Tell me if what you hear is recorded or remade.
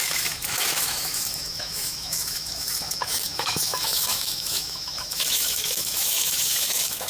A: remade